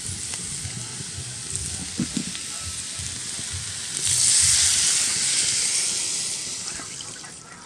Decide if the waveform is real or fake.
real